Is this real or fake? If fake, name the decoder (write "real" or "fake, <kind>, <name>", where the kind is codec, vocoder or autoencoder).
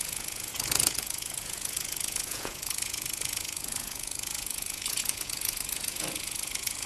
fake, vocoder, Vocos